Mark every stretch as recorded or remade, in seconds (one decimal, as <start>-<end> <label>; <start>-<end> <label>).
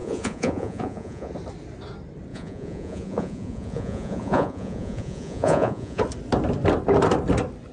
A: 0.0-1.3 remade; 1.3-2.3 recorded; 2.3-6.0 remade; 6.0-7.7 recorded